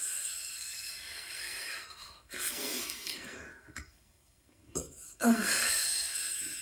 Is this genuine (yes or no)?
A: no